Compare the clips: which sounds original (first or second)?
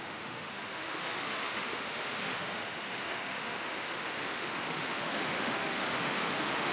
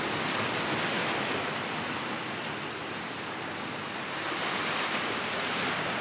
second